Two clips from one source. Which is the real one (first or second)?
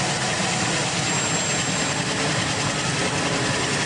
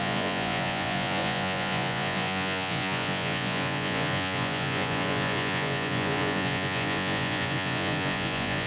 first